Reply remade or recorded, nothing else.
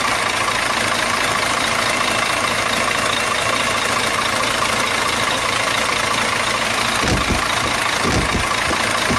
recorded